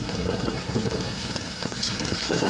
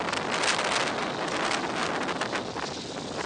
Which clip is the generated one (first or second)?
first